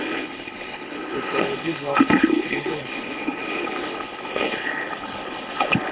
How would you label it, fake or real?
fake